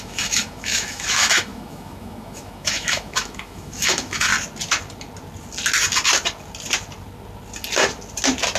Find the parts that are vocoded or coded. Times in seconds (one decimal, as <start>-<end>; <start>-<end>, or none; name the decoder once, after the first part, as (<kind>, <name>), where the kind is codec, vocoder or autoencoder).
0.0-4.3 (autoencoder, DAC-VAE)